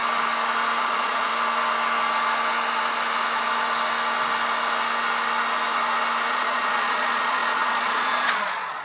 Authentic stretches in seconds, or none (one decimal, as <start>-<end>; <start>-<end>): 0.0-0.8; 1.3-6.3